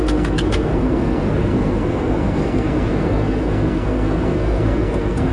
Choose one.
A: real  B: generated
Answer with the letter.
B